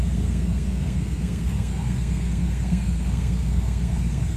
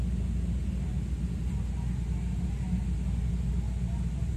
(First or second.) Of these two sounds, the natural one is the second